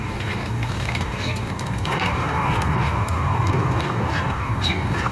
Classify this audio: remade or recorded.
remade